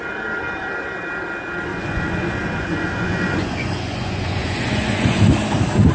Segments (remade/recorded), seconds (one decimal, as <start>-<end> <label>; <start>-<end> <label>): 0.0-1.7 recorded; 1.7-5.2 remade; 5.2-5.9 recorded